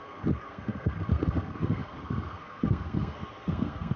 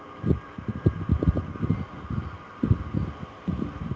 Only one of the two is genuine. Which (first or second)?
second